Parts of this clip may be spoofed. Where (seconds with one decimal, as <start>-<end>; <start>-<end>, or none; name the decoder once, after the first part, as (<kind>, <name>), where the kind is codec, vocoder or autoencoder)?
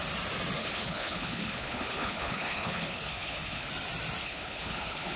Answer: 0.6-3.7 (codec, HILCodec); 4.2-5.2